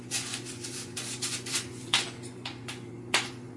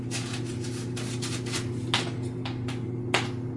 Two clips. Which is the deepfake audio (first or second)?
first